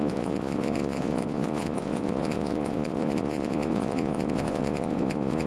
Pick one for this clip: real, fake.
fake